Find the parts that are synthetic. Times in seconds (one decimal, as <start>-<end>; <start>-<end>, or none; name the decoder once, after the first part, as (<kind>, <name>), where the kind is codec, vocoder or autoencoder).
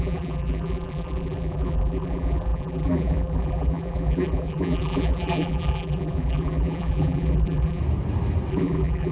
0.0-7.8 (vocoder, BigVGAN v2); 8.5-9.1